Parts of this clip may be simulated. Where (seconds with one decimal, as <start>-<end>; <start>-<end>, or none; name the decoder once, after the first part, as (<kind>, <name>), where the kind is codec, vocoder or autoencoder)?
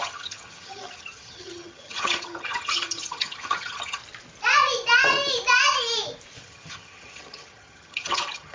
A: 0.0-4.0 (vocoder, HiFi-GAN); 6.4-8.5